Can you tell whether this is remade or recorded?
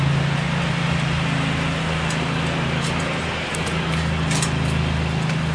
recorded